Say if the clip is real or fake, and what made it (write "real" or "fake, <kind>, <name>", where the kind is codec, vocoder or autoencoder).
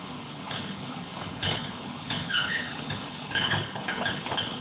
fake, codec, HILCodec